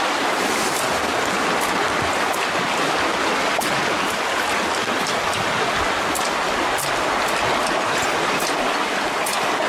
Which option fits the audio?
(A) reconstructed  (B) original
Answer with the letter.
B